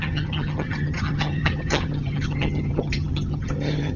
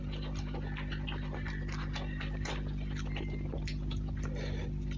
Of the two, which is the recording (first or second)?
second